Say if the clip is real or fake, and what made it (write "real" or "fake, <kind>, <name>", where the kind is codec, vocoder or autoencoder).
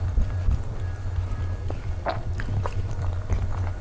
real